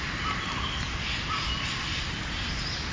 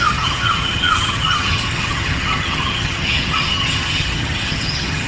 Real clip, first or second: first